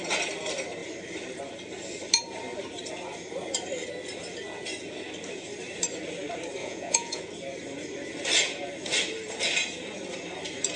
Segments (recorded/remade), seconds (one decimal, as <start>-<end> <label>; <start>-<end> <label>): 0.0-6.6 recorded; 6.6-7.2 remade; 7.2-10.8 recorded